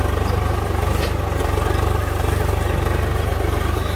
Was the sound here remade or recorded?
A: recorded